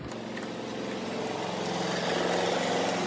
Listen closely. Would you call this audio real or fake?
real